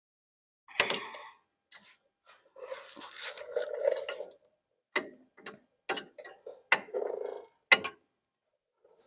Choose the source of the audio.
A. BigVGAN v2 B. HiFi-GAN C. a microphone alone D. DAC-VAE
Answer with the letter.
C